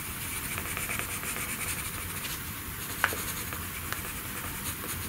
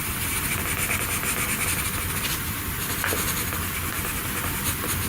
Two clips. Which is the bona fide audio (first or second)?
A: second